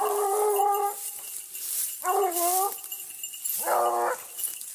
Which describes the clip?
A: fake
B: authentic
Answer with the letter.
B